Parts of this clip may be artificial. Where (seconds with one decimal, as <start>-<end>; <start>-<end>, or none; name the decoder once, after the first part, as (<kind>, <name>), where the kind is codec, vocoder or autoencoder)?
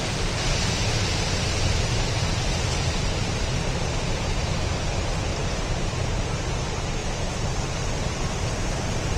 0.0-9.2 (vocoder, BigVGAN v2)